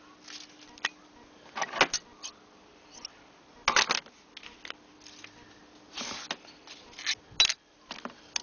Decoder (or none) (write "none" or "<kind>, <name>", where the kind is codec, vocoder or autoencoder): none